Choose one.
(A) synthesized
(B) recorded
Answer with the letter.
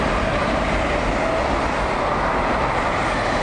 B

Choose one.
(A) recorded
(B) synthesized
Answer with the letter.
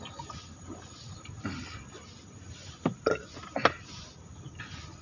A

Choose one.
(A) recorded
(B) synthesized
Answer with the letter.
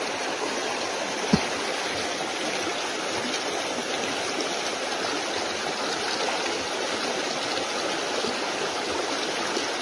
A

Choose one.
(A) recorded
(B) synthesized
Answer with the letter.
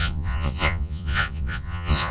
B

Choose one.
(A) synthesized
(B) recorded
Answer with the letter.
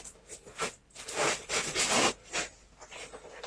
B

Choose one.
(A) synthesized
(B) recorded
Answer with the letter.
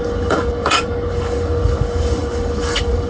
A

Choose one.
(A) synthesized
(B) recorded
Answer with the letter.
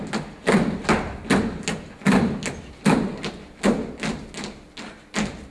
B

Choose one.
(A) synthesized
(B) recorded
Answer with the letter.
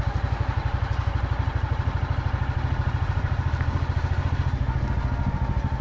B